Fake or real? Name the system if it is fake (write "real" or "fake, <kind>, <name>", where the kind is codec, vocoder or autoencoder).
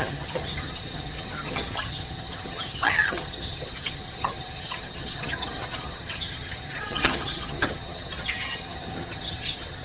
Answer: fake, vocoder, HiFi-GAN